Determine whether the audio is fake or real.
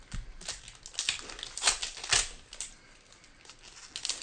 real